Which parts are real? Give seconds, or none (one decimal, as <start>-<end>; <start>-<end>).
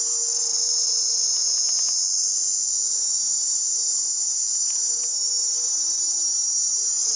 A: 0.0-7.2